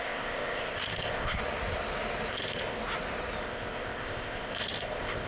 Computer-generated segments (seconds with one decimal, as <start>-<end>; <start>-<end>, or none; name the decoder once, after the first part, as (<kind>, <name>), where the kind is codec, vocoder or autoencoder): 0.0-1.4 (codec, ZipCodec); 2.3-2.8; 3.4-5.3